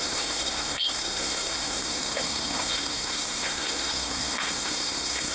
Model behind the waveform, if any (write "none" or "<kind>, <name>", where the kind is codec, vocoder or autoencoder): codec, SNAC